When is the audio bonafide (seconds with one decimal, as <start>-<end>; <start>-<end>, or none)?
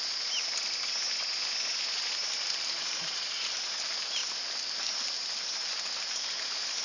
0.0-6.8